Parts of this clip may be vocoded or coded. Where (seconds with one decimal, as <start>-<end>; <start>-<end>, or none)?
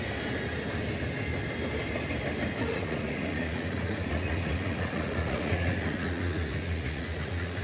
2.6-7.6